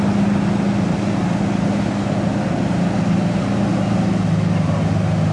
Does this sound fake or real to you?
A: real